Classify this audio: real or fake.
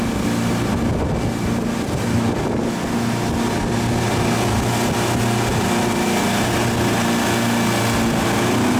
real